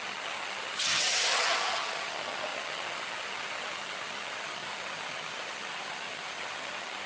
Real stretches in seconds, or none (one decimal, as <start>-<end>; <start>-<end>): none